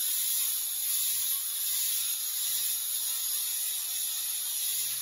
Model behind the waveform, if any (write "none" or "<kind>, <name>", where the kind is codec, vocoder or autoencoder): none